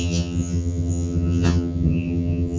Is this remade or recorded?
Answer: remade